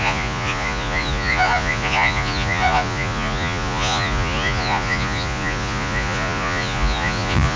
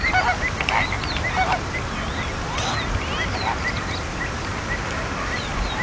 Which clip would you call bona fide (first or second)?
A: second